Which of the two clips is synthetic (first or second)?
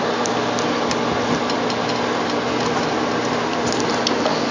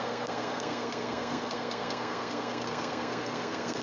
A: second